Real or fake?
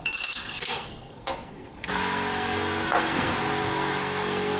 fake